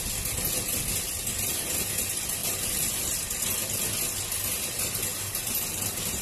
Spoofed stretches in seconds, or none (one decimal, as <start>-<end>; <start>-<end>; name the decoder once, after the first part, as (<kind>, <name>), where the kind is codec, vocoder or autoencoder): 2.4-3.0 (vocoder, BigVGAN v2); 5.1-6.2